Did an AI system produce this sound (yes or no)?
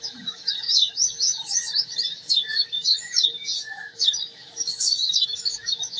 yes